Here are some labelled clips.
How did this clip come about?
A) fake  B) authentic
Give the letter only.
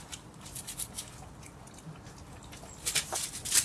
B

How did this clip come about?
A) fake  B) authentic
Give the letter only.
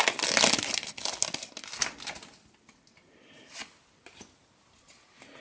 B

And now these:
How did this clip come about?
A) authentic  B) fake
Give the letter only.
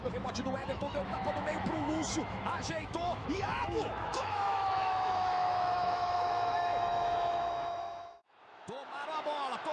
B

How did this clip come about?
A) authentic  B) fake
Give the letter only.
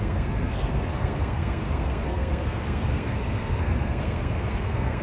B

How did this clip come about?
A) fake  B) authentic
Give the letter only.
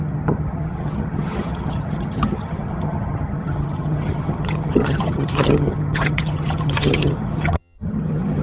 A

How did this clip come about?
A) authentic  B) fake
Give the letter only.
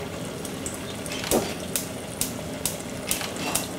A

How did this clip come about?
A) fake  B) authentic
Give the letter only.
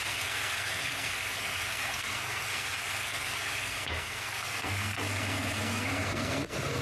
A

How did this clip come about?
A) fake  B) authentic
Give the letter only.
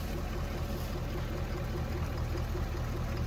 B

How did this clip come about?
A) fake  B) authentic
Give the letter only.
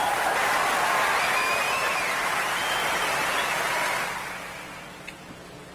B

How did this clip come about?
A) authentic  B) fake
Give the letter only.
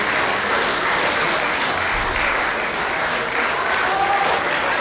A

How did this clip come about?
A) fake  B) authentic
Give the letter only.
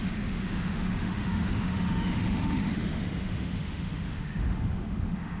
A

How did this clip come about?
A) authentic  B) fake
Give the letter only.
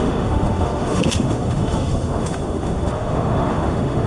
B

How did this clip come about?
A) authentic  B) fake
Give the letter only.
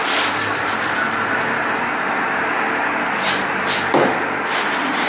A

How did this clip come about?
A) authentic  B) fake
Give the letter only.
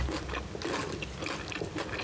A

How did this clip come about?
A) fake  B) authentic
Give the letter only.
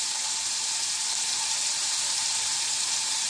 A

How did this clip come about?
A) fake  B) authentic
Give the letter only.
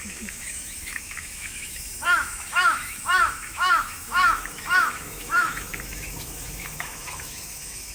A